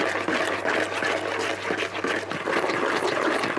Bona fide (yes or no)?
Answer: yes